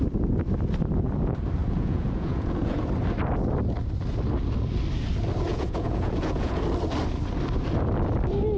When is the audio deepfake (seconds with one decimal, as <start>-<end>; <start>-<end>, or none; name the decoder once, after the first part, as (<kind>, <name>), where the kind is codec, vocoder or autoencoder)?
1.6-2.8 (vocoder, Vocos); 5.5-6.6